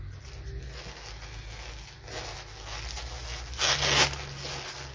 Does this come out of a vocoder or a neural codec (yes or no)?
no